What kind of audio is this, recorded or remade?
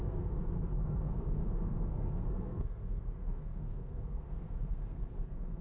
remade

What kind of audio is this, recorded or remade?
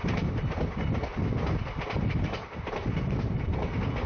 recorded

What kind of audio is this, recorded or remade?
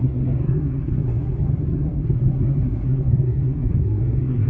remade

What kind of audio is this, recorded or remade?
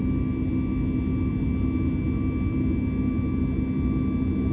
recorded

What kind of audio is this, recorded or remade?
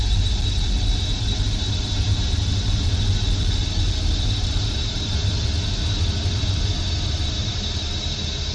recorded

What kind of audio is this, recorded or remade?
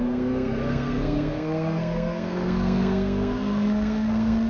remade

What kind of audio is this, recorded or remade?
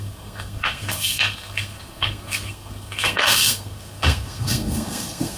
remade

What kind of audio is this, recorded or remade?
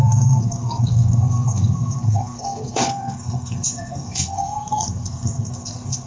remade